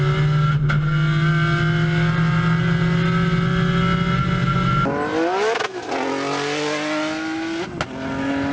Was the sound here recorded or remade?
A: recorded